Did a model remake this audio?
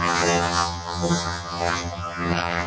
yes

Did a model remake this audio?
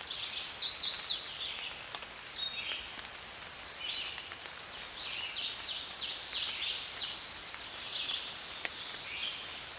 no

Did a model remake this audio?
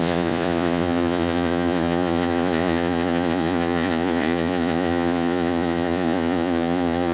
yes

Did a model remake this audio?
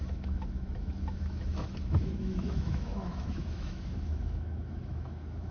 yes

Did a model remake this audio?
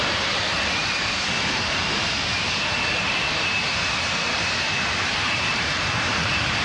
yes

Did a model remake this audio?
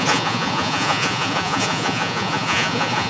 yes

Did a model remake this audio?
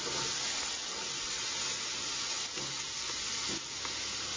no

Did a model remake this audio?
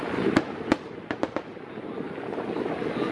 no